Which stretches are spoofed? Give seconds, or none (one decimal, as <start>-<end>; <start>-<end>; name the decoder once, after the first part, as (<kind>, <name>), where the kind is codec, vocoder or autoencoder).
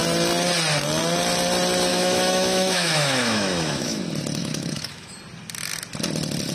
1.9-4.0 (autoencoder, DAC-VAE); 4.4-5.1